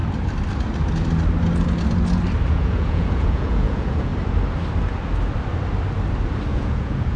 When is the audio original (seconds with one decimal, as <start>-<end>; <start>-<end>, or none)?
0.0-2.5; 4.1-6.5